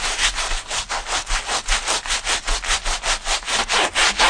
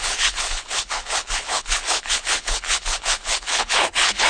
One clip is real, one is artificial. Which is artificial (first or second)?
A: second